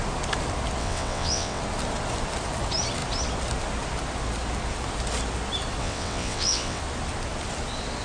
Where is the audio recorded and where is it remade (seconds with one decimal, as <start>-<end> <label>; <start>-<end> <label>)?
0.0-0.8 recorded; 0.8-1.6 remade; 1.6-5.8 recorded; 5.8-6.8 remade; 6.8-8.0 recorded